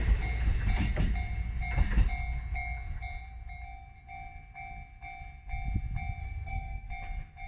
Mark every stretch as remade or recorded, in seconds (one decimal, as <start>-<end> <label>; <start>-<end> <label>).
0.0-6.2 recorded; 6.2-6.9 remade; 6.9-7.5 recorded